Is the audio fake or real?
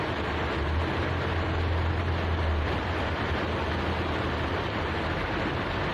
real